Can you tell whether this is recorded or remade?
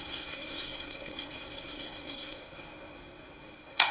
remade